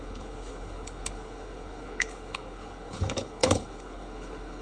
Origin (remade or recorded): remade